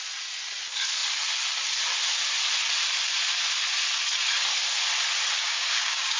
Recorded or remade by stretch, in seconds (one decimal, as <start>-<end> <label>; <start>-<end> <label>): 0.0-5.4 recorded; 5.4-6.2 remade